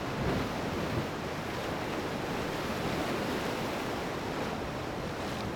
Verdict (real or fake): real